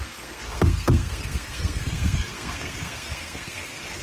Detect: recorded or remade remade